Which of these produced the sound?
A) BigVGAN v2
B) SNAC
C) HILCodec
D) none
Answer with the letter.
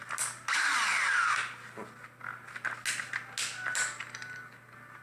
D